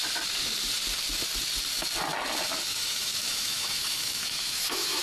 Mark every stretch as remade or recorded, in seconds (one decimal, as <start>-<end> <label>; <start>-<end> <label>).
0.0-2.7 recorded; 2.7-5.0 remade